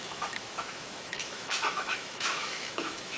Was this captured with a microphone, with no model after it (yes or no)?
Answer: no